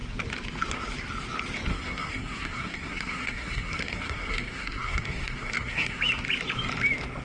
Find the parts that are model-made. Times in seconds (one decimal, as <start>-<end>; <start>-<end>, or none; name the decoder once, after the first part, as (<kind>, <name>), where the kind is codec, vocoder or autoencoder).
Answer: 1.7-6.0 (codec, SNAC)